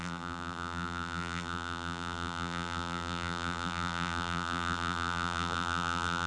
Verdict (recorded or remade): remade